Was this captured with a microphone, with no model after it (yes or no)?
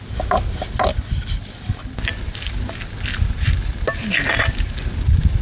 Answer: yes